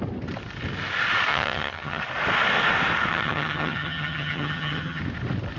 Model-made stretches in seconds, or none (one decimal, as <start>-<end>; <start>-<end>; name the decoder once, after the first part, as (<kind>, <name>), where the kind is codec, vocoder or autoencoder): 1.3-2.0 (vocoder, HiFi-GAN); 3.1-5.0